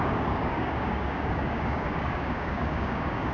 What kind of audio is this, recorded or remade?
remade